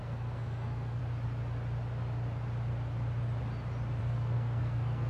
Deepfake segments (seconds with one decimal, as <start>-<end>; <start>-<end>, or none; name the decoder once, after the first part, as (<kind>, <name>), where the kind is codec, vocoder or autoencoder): 0.0-1.0 (codec, SNAC); 4.0-5.1